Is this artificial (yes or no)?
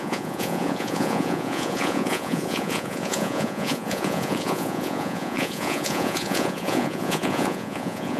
yes